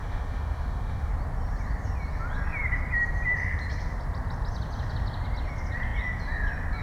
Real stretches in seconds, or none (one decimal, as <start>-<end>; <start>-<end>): 1.1-6.8